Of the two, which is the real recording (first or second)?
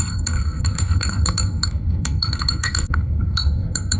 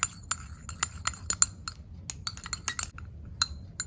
second